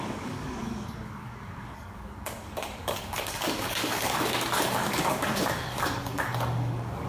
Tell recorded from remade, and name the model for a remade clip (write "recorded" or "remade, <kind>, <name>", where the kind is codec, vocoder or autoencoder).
remade, codec, DAC